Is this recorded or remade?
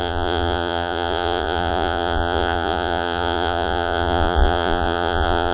remade